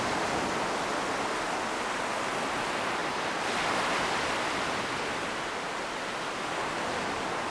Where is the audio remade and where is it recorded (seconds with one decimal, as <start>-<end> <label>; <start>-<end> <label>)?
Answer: 0.0-3.0 recorded; 3.0-5.3 remade; 5.3-7.5 recorded